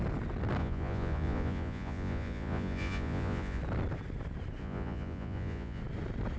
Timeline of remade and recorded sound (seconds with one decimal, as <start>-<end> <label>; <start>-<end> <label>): 0.0-0.6 recorded; 0.6-3.6 remade; 3.6-4.6 recorded; 4.6-5.8 remade; 5.8-6.4 recorded